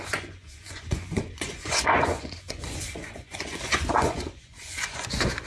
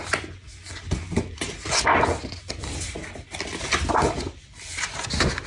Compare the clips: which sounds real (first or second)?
second